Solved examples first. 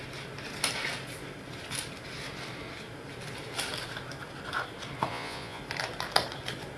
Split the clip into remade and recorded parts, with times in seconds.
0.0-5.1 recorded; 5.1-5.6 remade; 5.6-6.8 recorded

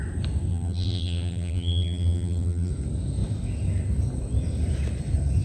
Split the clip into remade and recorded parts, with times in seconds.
0.0-0.5 recorded; 0.5-2.7 remade; 2.7-5.4 recorded

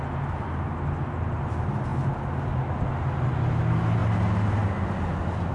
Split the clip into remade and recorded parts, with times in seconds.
0.0-5.5 recorded

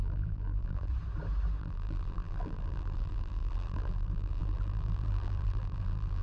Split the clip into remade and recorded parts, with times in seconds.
0.0-0.9 remade; 0.9-1.6 recorded; 1.6-6.2 remade

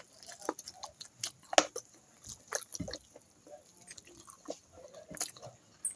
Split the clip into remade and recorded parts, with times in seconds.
0.0-6.0 recorded

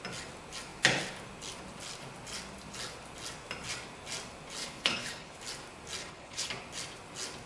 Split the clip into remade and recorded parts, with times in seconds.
0.0-4.6 recorded; 4.6-5.4 remade; 5.4-6.0 recorded; 6.0-6.5 remade; 6.5-7.5 recorded